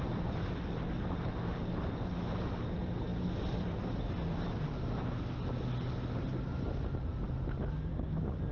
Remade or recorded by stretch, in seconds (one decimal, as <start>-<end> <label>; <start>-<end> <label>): 0.0-7.9 recorded; 7.9-8.5 remade